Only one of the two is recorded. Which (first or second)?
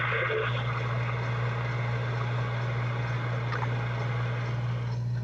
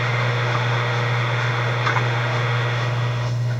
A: first